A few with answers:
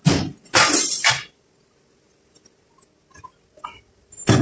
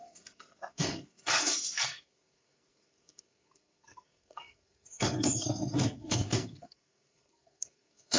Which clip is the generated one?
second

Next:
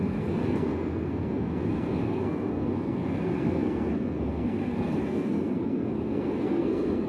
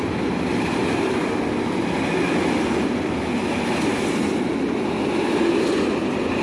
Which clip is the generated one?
first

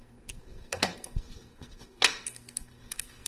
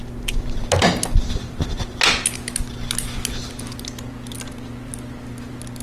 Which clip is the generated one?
first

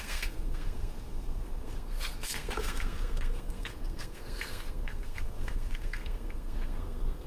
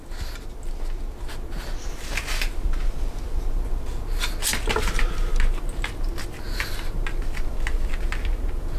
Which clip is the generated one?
first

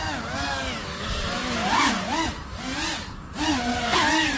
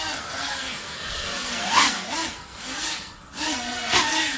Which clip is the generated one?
second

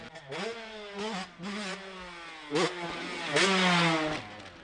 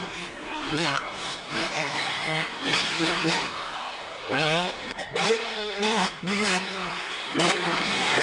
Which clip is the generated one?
second